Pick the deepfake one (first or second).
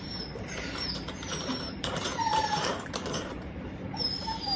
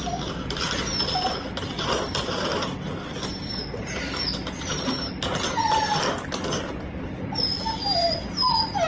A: first